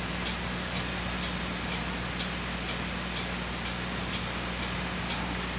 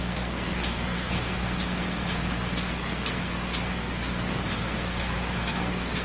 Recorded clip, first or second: first